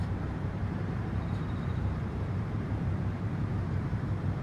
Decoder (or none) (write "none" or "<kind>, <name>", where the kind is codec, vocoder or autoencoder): vocoder, BigVGAN v2